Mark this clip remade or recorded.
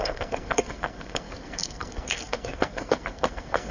remade